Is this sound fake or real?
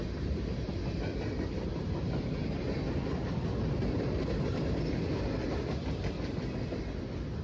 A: real